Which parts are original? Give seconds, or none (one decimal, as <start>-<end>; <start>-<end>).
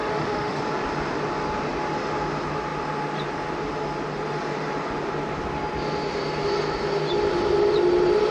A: 0.6-8.3